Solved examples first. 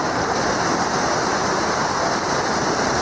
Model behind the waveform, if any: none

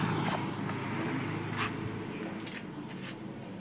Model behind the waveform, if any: none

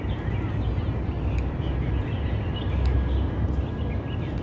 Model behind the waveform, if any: none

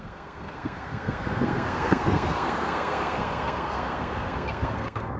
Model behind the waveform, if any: codec, SNAC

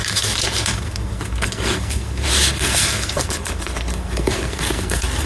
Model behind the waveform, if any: codec, SNAC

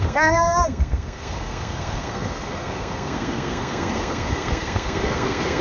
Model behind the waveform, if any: codec, SNAC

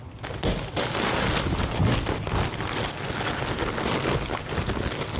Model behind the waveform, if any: none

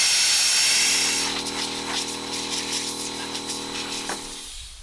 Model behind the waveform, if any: none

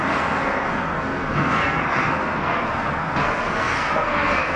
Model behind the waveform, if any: codec, SNAC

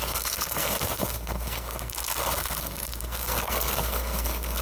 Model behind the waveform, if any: codec, SNAC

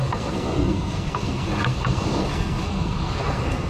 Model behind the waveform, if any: codec, SNAC